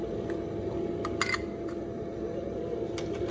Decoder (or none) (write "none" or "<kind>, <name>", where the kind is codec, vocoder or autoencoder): none